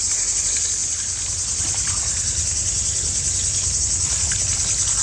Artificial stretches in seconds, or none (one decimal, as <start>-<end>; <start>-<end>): none